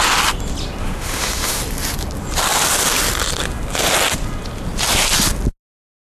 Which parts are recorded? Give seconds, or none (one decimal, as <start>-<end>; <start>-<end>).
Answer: 0.0-0.8; 1.6-6.1

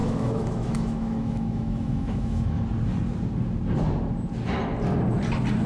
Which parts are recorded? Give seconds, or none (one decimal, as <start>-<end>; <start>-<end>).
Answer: 2.6-5.7